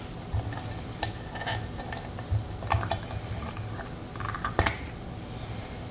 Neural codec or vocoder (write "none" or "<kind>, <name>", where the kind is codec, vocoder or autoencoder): none